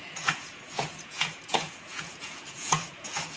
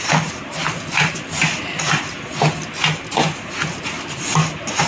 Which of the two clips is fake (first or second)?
first